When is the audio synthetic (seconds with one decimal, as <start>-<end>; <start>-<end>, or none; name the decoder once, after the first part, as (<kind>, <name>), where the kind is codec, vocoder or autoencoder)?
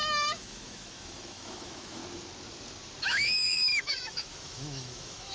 0.0-2.0 (autoencoder, DAC-VAE); 3.0-5.3